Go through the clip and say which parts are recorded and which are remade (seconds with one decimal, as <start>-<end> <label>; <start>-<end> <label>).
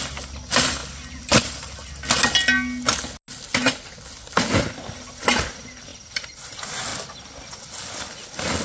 0.0-8.6 recorded